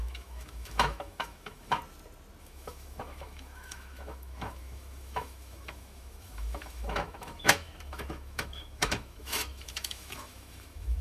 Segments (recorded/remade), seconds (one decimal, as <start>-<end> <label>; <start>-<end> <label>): 0.0-1.8 remade; 1.8-2.4 recorded; 2.4-11.0 remade